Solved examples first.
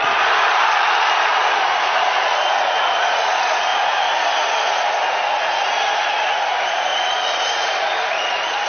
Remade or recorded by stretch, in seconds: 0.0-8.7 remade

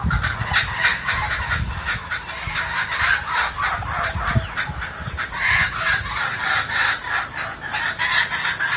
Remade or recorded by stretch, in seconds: 0.0-0.9 recorded; 0.9-2.1 remade; 2.1-8.8 recorded